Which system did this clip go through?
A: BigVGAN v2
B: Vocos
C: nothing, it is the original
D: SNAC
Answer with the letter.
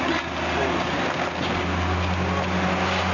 C